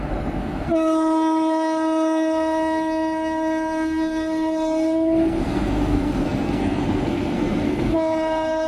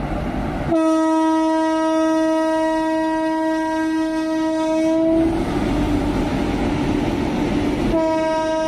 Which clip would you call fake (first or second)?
first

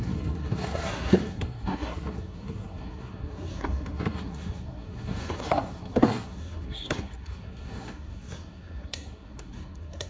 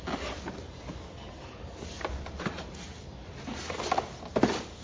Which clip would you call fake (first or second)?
first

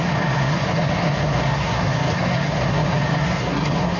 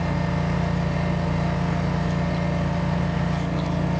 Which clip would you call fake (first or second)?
first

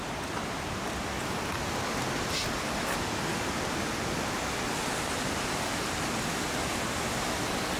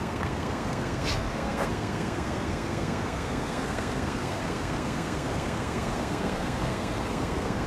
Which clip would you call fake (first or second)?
second